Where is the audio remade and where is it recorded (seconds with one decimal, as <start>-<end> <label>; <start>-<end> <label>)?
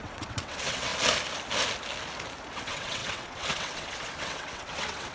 0.0-0.9 remade; 0.9-2.5 recorded; 2.5-5.1 remade